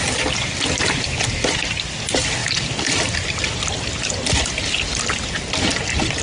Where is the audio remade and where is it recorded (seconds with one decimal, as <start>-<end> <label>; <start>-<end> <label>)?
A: 0.0-6.2 recorded